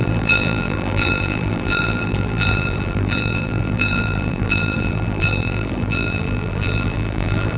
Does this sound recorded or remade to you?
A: remade